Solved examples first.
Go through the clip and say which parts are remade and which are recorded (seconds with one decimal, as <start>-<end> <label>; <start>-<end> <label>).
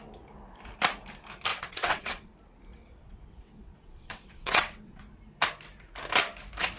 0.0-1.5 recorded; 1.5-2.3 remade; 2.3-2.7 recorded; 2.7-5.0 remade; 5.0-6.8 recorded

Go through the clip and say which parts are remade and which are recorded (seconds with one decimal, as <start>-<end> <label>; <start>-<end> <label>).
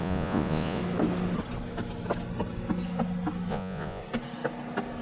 0.0-0.8 remade; 0.8-3.5 recorded; 3.5-4.0 remade; 4.0-5.0 recorded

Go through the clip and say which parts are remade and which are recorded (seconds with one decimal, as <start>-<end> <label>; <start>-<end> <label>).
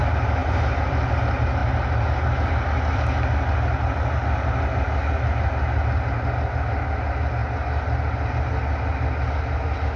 0.0-0.4 recorded; 0.4-1.1 remade; 1.1-10.0 recorded